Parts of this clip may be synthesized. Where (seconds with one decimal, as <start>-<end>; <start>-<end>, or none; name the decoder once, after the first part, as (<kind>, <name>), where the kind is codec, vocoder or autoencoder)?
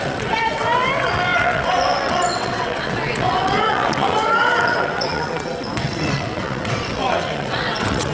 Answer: 0.0-8.1 (vocoder, WaveNeXt)